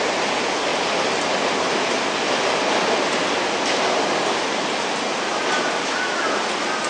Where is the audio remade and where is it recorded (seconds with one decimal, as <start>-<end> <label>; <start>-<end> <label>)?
0.0-6.9 recorded